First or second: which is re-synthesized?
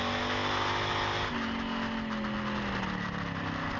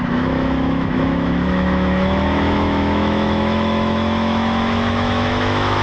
second